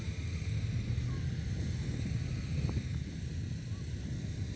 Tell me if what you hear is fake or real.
real